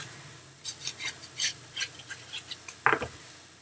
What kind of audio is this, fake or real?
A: real